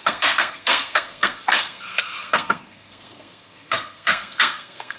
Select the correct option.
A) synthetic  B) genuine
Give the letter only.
A